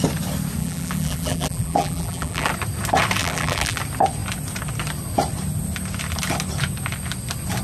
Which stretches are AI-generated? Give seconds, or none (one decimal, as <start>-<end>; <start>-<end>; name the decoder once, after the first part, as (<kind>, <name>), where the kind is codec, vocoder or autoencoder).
0.6-2.5 (vocoder, BigVGAN v2); 3.2-3.8